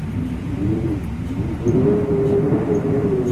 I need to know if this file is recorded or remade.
recorded